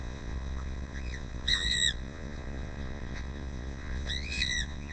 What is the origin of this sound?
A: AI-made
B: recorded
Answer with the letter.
A